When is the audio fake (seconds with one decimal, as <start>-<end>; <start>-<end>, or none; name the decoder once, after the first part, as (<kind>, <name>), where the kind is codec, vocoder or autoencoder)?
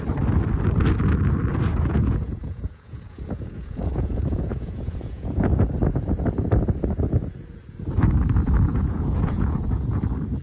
1.7-5.5 (vocoder, Vocos); 8.7-10.0